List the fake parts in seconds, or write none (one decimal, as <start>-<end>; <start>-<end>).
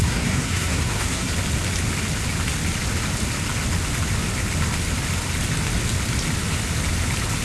0.0-1.3